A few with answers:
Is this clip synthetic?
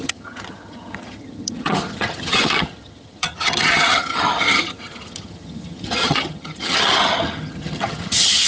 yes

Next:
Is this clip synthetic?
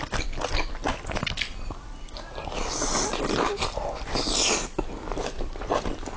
no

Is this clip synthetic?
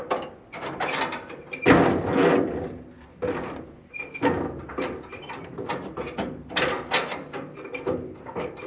no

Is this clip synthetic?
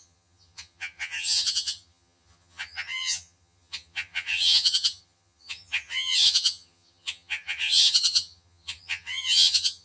yes